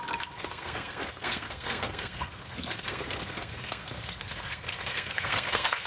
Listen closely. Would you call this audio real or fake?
fake